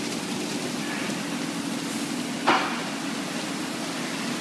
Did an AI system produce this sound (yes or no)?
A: no